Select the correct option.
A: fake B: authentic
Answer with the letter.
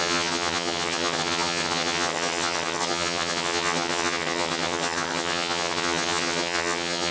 A